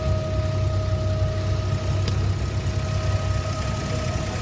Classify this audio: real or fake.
real